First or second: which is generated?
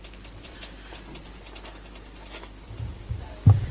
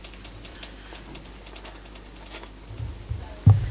first